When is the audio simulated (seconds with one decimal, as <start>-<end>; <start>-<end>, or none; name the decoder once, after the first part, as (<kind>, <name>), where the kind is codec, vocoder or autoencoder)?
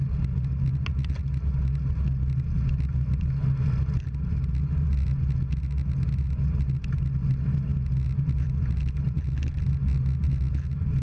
none